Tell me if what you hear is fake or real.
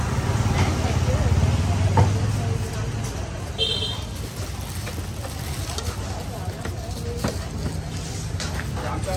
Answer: real